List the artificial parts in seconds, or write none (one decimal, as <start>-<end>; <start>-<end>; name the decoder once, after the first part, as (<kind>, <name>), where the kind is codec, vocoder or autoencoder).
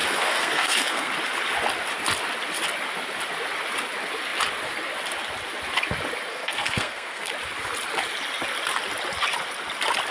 0.0-1.1 (codec, SNAC); 6.3-7.3